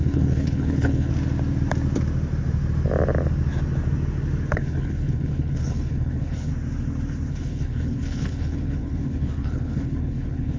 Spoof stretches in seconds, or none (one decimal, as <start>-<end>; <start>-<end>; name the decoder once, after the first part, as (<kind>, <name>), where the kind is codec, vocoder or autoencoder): 0.0-1.1 (codec, HILCodec); 4.5-6.5; 7.3-10.6